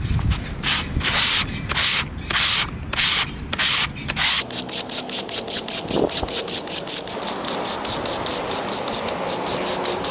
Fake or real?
real